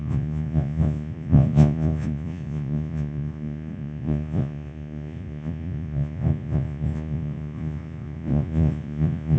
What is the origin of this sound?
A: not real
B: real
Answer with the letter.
A